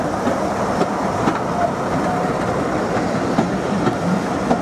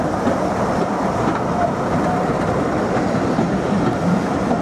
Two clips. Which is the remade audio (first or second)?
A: second